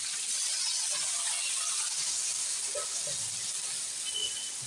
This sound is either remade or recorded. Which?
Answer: recorded